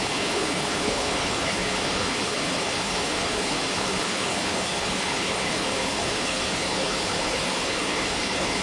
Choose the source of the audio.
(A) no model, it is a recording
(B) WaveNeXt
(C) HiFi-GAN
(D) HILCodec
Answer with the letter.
D